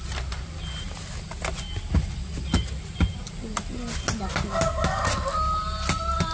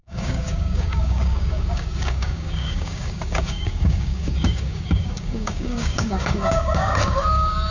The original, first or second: first